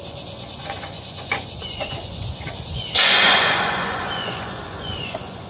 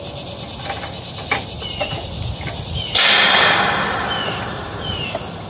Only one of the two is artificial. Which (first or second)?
first